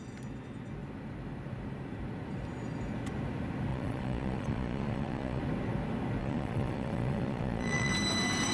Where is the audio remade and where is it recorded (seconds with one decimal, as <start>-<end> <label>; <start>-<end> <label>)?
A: 0.0-3.7 recorded; 3.7-5.4 remade; 5.4-6.2 recorded; 6.2-7.9 remade; 7.9-8.5 recorded